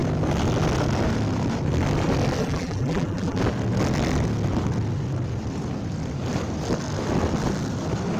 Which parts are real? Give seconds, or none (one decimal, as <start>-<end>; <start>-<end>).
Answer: 0.0-2.4; 3.4-8.2